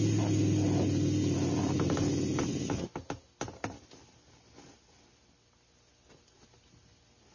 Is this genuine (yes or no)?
yes